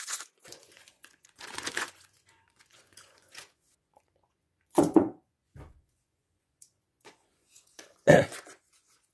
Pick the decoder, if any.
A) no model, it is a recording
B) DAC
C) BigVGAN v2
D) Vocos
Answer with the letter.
D